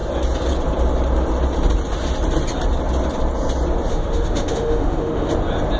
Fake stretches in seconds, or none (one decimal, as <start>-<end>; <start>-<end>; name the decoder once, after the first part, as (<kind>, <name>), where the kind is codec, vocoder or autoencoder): 3.9-5.3 (autoencoder, DAC-VAE)